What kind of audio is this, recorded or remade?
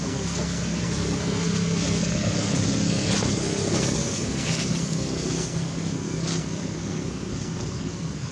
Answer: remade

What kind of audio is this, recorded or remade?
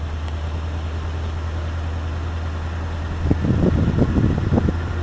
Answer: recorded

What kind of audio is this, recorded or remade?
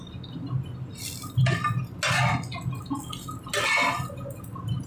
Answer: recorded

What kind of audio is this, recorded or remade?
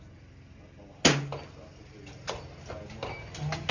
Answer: recorded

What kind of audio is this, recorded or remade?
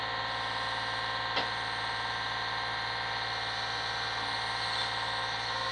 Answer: recorded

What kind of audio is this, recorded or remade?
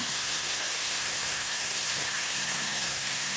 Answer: remade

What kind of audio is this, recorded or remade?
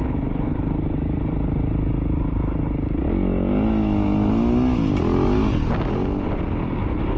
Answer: recorded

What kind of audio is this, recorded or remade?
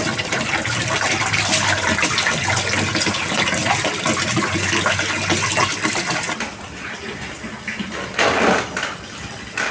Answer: recorded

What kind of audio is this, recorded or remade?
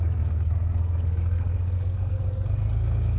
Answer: remade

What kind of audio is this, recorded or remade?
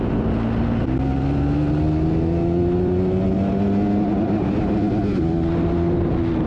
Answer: recorded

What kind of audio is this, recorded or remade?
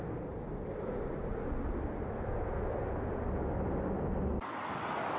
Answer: recorded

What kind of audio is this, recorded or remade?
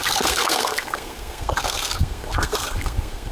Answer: remade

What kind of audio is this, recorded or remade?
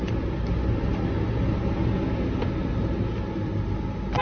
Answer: recorded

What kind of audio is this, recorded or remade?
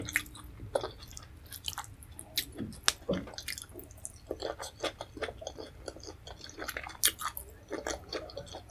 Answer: recorded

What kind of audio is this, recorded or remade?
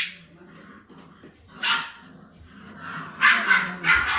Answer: recorded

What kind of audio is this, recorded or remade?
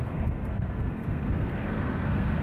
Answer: remade